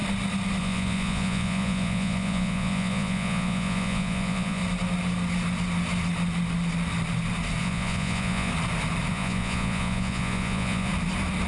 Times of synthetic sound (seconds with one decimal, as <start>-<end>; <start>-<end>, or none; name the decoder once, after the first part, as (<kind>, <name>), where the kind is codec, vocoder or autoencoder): 0.6-4.6 (vocoder, Vocos); 7.6-8.5; 9.1-10.9